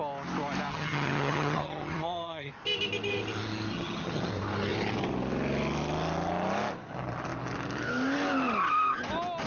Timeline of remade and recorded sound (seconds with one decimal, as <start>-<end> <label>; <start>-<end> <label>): 0.0-0.7 recorded; 0.7-2.5 remade; 2.5-3.7 recorded; 3.7-4.3 remade; 4.3-9.5 recorded